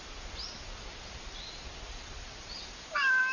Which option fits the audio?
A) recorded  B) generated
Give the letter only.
A